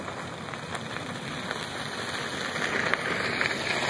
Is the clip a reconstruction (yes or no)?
no